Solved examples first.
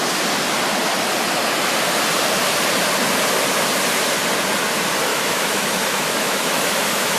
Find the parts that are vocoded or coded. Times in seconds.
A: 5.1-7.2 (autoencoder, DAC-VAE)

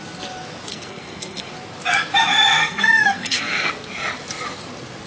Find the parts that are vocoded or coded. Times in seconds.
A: 0.7-1.5 (codec, SNAC); 2.6-3.7

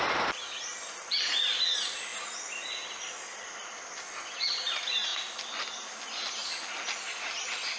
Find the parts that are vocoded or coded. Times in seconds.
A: none

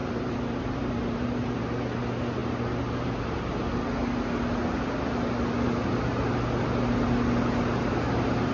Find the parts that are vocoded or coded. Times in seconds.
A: 0.0-1.6 (vocoder, BigVGAN v2)